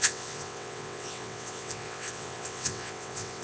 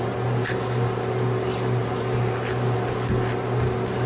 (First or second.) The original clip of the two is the second